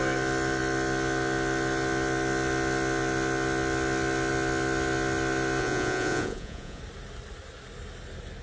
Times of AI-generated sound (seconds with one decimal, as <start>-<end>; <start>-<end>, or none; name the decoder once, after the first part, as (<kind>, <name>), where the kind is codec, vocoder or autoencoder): 5.6-6.8 (vocoder, Vocos)